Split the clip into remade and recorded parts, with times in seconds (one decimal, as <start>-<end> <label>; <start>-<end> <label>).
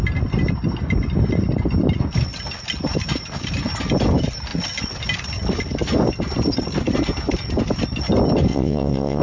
0.0-8.5 recorded; 8.5-9.2 remade